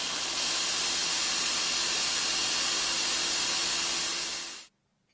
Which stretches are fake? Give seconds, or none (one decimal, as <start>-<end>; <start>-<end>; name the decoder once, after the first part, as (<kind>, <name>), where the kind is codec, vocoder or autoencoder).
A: none